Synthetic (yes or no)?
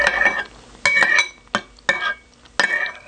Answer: no